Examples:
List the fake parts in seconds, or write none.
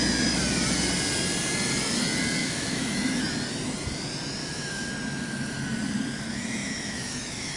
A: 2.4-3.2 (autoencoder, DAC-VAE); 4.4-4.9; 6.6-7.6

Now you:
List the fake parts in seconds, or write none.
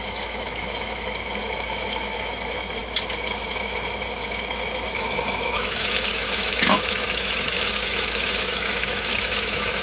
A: 0.0-9.8 (autoencoder, DAC-VAE)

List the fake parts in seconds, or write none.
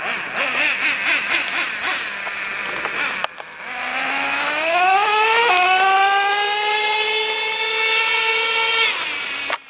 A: 3.9-5.5 (autoencoder, DAC-VAE)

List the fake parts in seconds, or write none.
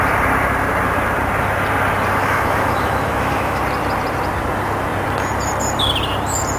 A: 2.2-3.6 (autoencoder, DAC-VAE)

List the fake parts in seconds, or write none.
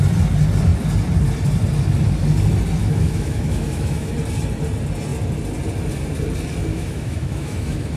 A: 2.8-4.1 (autoencoder, DAC-VAE); 6.7-8.0